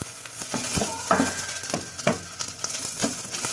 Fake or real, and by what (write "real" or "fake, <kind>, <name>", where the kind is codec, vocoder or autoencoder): fake, vocoder, Vocos